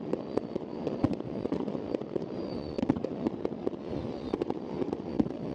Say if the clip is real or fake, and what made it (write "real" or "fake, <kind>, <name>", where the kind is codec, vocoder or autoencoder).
fake, vocoder, Vocos